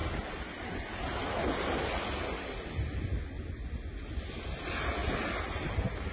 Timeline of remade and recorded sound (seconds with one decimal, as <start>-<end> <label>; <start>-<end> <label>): 0.0-6.1 recorded